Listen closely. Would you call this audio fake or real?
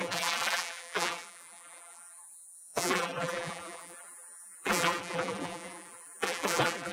fake